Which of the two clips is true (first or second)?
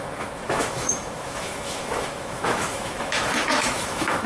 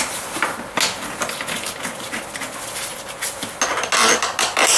second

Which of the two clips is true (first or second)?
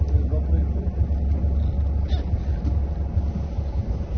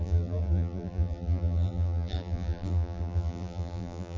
first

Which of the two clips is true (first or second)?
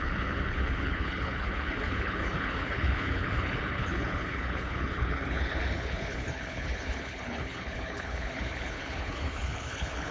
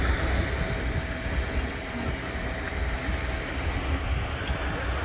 second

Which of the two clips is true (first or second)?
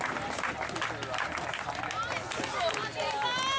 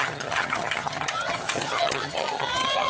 first